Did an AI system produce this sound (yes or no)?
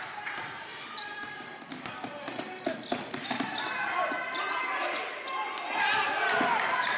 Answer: no